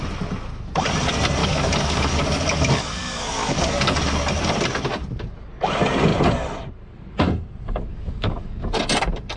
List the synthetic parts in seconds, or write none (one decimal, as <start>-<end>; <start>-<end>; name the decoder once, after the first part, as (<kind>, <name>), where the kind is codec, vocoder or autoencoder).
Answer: 1.4-4.0 (codec, DAC); 7.9-8.7